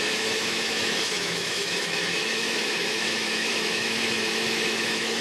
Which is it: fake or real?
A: fake